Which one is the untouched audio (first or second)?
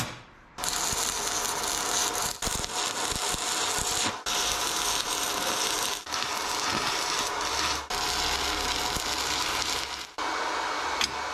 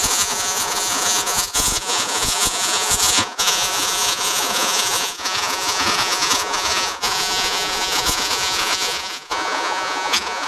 first